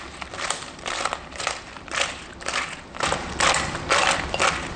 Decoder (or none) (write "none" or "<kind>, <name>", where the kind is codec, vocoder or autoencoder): none